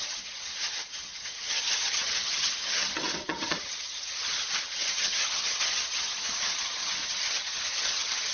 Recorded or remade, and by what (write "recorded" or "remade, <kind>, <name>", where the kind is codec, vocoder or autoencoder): remade, vocoder, HiFi-GAN